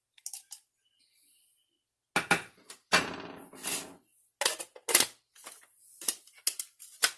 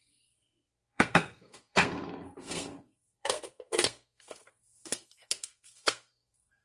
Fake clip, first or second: second